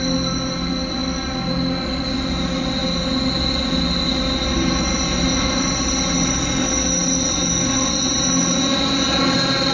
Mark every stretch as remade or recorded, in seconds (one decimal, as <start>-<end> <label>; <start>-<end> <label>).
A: 0.0-9.7 recorded